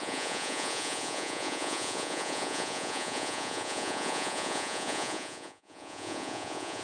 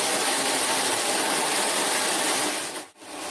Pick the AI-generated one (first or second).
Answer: first